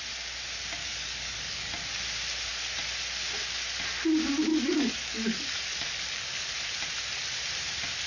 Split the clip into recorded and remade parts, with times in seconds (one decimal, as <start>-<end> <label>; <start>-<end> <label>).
0.0-0.8 recorded; 0.8-1.7 remade; 1.7-4.5 recorded; 4.5-6.5 remade; 6.5-8.1 recorded